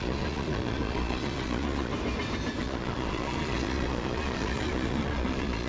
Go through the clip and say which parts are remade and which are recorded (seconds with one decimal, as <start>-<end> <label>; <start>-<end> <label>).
0.0-1.9 remade; 1.9-2.6 recorded; 2.6-5.7 remade